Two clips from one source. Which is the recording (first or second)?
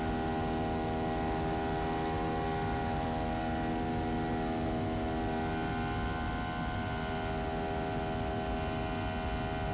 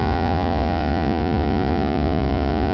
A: first